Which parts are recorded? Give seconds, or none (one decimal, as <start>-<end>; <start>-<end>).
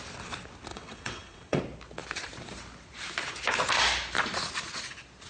0.0-0.7; 1.6-5.3